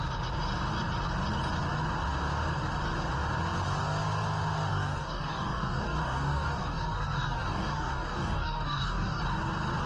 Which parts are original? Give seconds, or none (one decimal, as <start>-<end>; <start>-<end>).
0.0-4.7; 9.2-9.9